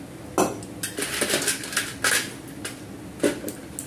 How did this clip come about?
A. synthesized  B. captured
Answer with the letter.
B